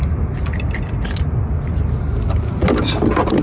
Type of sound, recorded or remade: recorded